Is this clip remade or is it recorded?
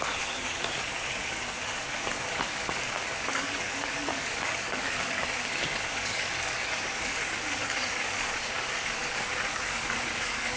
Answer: remade